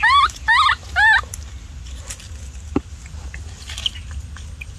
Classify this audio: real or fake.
real